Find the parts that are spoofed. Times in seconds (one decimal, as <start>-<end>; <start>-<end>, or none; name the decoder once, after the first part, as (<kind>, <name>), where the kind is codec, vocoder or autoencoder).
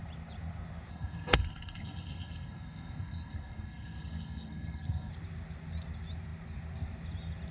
0.9-5.1 (codec, SNAC)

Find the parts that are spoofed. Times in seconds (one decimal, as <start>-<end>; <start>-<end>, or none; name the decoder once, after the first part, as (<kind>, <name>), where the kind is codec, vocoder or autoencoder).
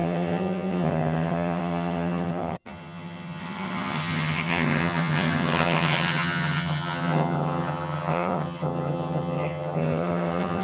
0.0-10.6 (vocoder, HiFi-GAN)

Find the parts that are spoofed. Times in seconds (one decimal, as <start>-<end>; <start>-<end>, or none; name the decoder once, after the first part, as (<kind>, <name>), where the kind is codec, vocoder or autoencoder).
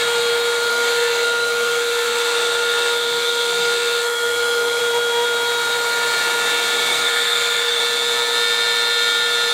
0.7-4.8 (codec, SNAC); 6.9-7.8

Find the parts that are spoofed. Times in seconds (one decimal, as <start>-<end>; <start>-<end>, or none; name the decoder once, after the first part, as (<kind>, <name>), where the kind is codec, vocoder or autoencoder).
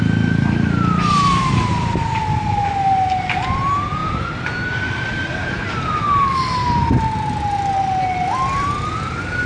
none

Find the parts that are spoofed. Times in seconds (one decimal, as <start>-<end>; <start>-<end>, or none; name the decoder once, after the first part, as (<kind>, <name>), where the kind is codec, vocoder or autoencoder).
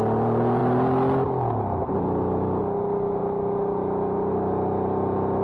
none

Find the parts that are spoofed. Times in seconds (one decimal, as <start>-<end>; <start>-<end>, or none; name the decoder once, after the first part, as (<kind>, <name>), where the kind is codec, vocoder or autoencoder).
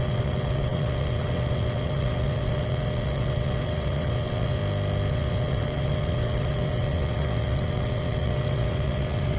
0.0-4.6 (vocoder, WaveNeXt); 5.1-9.4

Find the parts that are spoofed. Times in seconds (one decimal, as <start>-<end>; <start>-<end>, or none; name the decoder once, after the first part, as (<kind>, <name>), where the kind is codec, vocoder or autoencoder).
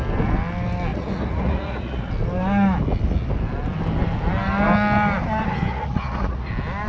0.9-2.1 (vocoder, Vocos); 5.7-6.5